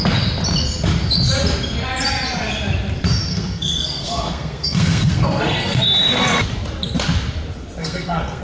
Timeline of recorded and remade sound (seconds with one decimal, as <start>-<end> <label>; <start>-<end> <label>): 0.0-3.3 recorded; 3.3-5.8 remade; 5.8-7.8 recorded; 7.8-8.4 remade